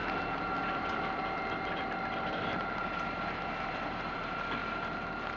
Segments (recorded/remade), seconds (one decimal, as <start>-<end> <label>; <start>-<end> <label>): 0.0-2.5 recorded; 2.5-4.6 remade; 4.6-5.4 recorded